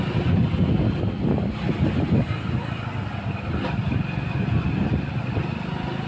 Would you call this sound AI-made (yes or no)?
no